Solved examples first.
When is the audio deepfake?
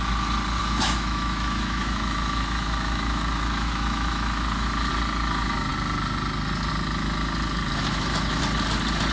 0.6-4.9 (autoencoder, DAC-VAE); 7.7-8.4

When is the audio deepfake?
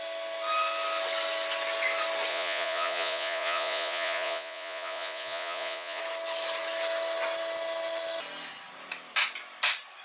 2.3-6.0 (vocoder, Vocos)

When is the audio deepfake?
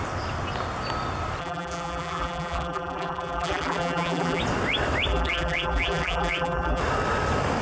1.4-4.4 (vocoder, BigVGAN v2); 5.1-6.8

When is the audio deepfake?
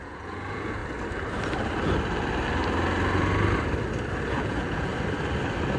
0.0-0.8 (vocoder, Vocos); 4.3-4.9